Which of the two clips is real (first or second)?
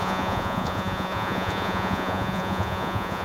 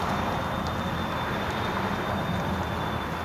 second